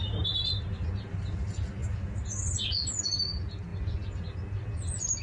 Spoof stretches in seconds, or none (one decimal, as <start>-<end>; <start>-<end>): none